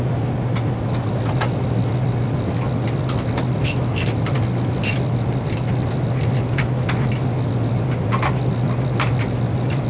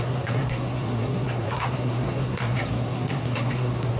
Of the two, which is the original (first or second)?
first